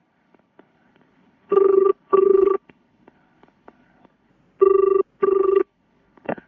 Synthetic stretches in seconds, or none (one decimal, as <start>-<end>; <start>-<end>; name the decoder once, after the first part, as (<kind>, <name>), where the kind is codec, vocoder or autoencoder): 0.0-4.3 (codec, HILCodec); 5.2-6.5

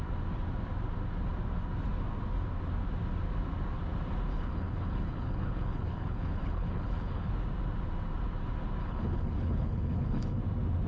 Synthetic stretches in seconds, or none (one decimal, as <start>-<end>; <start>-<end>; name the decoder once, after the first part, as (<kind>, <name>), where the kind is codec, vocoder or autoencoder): 4.3-7.3 (codec, HILCodec); 8.8-10.4